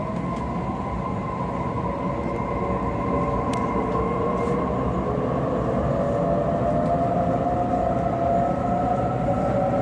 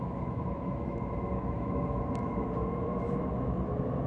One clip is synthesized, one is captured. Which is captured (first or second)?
first